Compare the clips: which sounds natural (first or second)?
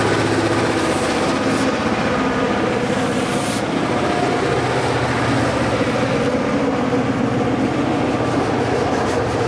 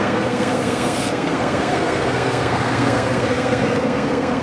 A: first